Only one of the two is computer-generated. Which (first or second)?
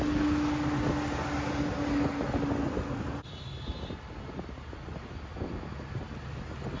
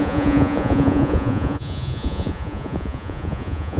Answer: second